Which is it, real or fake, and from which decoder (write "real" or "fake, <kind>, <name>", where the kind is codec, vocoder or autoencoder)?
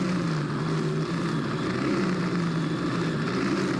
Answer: real